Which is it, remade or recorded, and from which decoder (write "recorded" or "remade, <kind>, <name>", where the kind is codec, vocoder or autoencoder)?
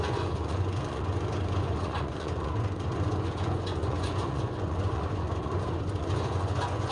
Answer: remade, vocoder, Vocos